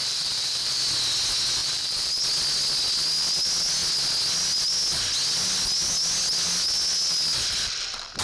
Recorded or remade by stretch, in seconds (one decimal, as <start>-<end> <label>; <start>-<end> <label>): 0.0-0.8 remade; 0.8-1.6 recorded; 1.6-2.2 remade; 2.2-8.2 recorded